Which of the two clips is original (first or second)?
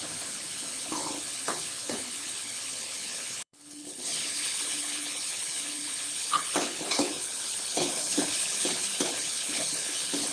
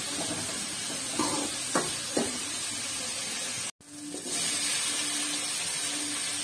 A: second